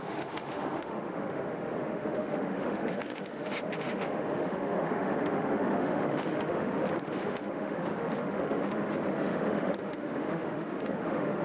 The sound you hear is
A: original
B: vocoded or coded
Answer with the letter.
B